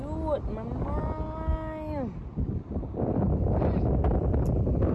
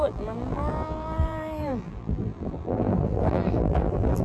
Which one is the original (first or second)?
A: first